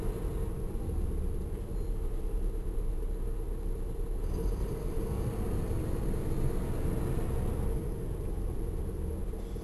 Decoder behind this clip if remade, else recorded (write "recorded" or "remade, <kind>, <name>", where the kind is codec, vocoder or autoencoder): recorded